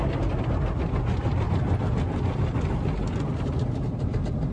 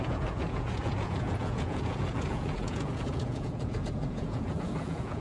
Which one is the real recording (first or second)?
first